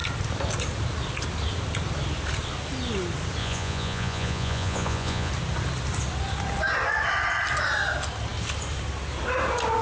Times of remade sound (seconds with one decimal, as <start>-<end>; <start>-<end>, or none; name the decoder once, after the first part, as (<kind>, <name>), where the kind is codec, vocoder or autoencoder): 3.4-5.3 (vocoder, Vocos)